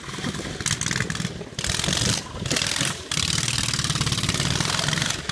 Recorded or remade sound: recorded